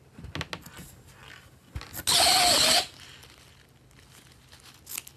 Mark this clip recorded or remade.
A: recorded